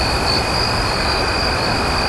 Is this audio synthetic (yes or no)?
no